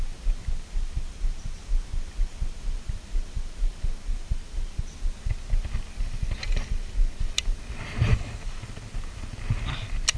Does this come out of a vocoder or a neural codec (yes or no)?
no